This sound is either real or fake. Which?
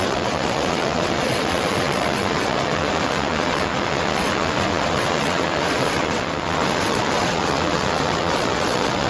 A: fake